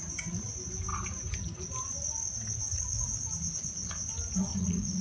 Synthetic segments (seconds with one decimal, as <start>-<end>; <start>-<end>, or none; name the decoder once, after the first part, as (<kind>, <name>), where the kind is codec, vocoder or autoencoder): 4.5-5.0 (vocoder, Vocos)